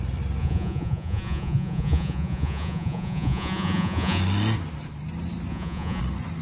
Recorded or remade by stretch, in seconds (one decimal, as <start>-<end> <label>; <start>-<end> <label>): 0.0-0.4 recorded; 0.4-4.2 remade; 4.2-5.5 recorded; 5.5-6.0 remade; 6.0-6.4 recorded